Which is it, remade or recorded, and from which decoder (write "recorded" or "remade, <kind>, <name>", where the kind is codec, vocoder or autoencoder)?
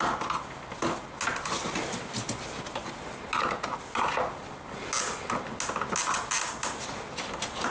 recorded